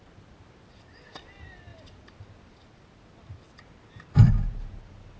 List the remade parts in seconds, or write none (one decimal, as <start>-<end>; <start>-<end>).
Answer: none

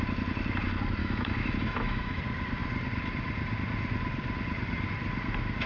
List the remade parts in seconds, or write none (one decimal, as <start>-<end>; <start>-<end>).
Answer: 1.0-2.2

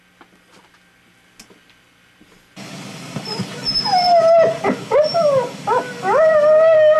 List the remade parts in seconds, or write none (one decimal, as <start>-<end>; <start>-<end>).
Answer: none

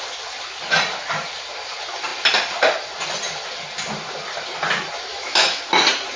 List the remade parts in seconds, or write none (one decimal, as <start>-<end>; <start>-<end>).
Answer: 5.1-5.6

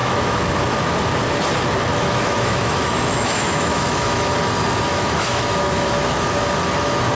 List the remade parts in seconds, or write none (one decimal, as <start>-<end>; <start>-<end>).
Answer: 0.0-0.5; 1.9-4.3; 4.9-6.4